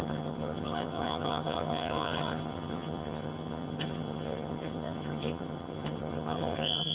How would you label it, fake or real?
fake